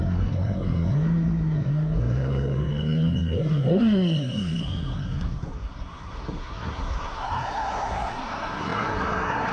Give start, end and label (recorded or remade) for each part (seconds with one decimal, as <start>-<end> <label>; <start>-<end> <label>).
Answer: 0.0-9.5 remade